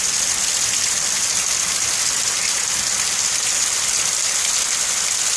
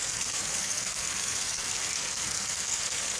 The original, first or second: first